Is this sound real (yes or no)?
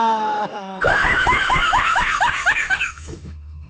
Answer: no